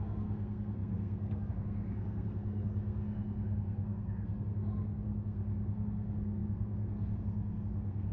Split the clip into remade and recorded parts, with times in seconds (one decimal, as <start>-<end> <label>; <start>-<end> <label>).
0.0-8.1 remade